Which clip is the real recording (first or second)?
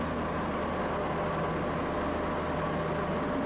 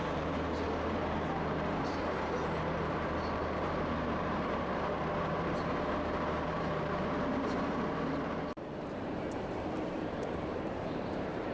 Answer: first